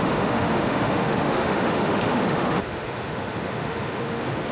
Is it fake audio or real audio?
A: fake